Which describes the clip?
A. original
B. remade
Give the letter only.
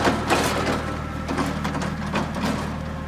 A